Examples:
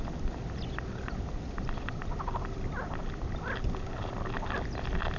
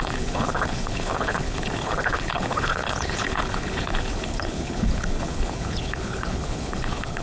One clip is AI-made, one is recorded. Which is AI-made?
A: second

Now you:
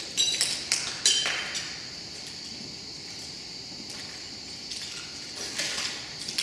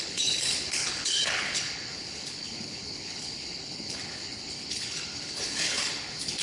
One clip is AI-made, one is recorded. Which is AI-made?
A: second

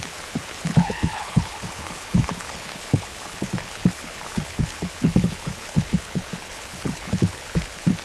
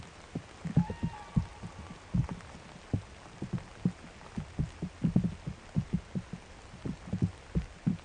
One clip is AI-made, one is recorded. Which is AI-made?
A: first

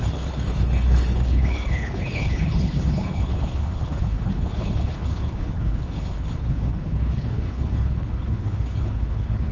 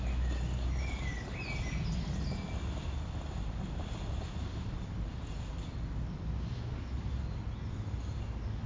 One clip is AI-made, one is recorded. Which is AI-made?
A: first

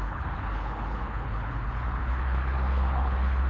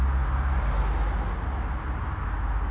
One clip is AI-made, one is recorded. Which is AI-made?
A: first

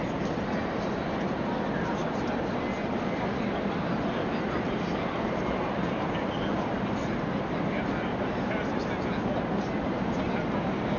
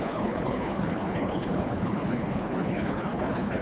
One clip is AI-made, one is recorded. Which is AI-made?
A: second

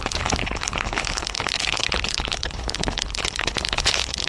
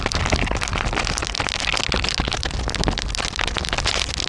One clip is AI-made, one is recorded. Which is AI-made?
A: first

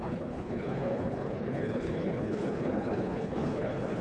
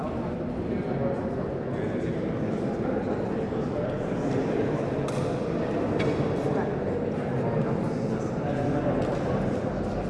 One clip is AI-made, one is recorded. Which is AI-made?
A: first